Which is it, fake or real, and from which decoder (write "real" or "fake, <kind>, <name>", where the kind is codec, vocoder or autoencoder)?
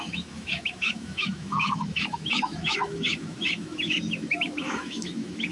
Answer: fake, autoencoder, DAC-VAE